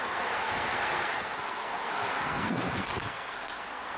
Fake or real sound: fake